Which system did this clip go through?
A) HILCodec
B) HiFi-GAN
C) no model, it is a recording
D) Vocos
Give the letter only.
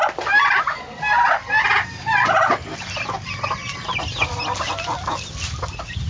C